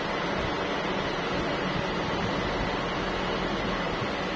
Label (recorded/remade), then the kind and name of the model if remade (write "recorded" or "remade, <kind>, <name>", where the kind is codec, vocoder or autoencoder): recorded